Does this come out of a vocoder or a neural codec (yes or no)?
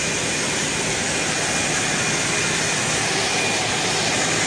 no